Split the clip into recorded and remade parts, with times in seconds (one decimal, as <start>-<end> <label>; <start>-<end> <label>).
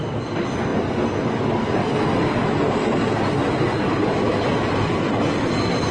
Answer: 0.0-5.9 recorded